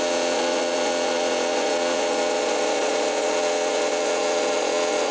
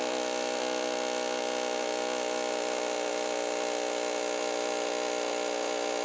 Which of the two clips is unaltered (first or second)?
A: second